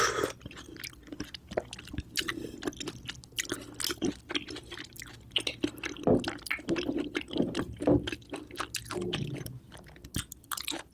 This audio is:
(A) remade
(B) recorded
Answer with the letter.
B